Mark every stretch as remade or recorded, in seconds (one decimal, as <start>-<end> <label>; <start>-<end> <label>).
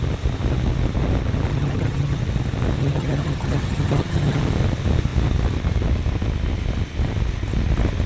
0.0-1.5 recorded; 1.5-2.2 remade; 2.2-2.8 recorded; 2.8-4.4 remade; 4.4-8.1 recorded